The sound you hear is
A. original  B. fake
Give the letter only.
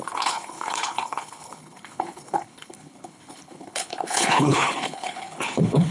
B